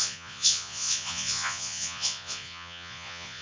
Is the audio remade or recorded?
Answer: remade